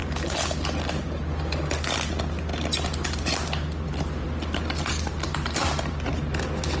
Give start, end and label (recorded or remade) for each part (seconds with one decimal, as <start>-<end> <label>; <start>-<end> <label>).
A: 0.0-6.8 recorded